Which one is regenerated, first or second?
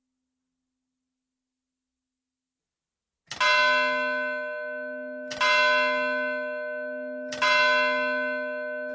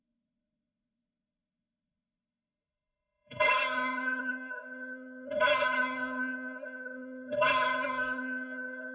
second